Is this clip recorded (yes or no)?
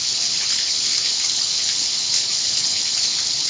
no